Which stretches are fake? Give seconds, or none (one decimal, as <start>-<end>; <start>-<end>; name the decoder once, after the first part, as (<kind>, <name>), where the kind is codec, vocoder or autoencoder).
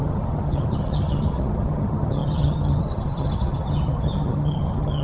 0.0-5.0 (vocoder, HiFi-GAN)